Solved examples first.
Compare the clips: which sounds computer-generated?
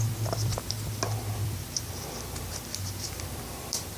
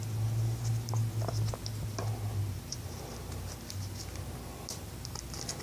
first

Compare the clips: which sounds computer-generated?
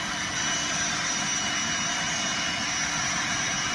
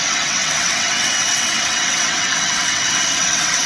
second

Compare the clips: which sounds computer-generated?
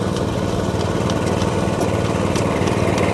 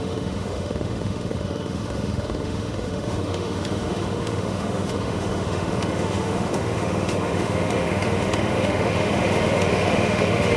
second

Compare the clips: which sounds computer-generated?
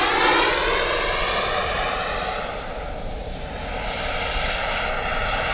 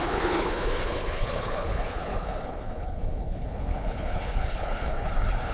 second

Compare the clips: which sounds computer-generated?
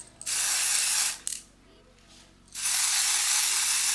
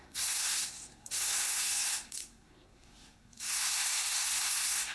second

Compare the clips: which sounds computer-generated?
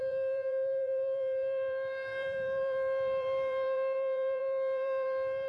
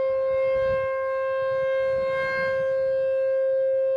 first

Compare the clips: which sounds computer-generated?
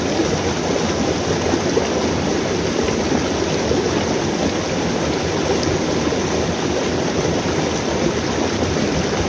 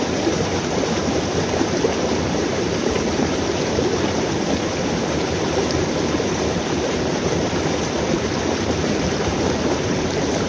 second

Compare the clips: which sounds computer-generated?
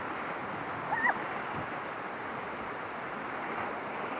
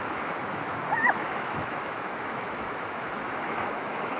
second